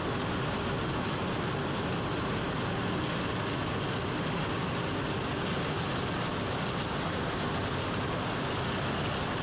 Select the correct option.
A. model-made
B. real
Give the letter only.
B